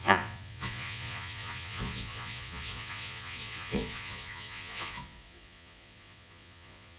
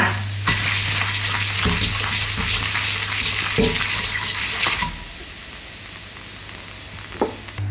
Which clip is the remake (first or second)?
first